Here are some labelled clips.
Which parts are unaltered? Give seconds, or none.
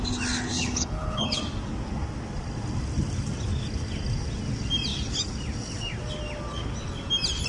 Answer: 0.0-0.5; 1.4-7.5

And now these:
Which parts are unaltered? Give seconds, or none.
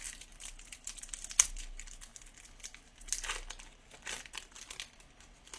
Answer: 0.0-5.6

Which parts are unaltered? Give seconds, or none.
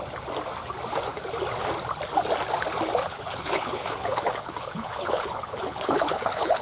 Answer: 0.0-3.1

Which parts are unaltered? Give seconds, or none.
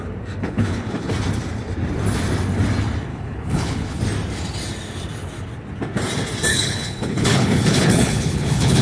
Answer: 0.0-0.4; 1.1-3.1; 4.0-6.5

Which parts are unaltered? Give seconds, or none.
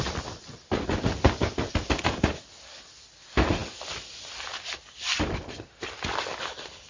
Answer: 0.0-6.9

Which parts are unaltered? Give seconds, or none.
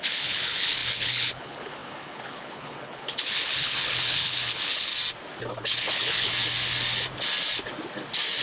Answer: 4.9-5.6; 6.3-8.4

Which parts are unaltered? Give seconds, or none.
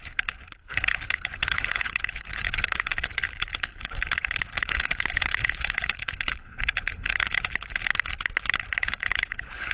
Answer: 7.9-8.8